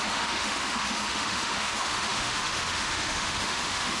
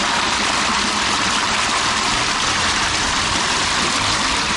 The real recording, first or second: second